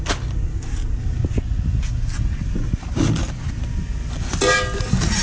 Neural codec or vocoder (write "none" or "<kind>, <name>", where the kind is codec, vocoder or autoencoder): none